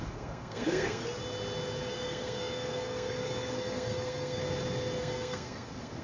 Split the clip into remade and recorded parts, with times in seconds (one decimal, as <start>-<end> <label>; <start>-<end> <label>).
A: 0.0-1.0 remade; 1.0-1.9 recorded; 1.9-4.4 remade; 4.4-5.0 recorded; 5.0-6.0 remade

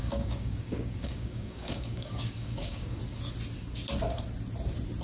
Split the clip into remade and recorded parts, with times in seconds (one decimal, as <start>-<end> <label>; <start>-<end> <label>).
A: 0.0-3.0 remade; 3.0-5.0 recorded

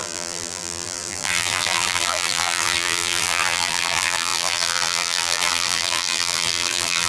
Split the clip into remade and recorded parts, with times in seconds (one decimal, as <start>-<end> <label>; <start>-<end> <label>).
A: 0.0-7.1 remade

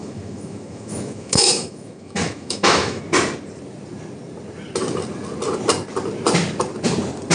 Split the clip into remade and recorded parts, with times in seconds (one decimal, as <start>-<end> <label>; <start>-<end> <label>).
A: 0.0-3.0 remade; 3.0-7.3 recorded

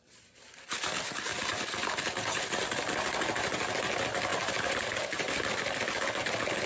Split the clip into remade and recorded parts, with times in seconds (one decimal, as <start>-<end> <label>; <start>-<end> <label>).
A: 0.0-6.7 recorded

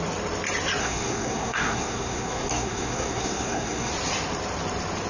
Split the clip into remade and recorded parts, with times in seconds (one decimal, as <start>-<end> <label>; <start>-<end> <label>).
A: 0.0-0.8 recorded; 0.8-3.9 remade; 3.9-5.1 recorded

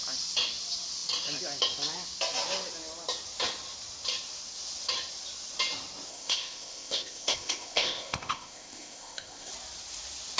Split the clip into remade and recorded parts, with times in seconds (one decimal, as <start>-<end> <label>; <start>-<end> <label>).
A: 0.0-6.1 recorded; 6.1-9.5 remade; 9.5-10.4 recorded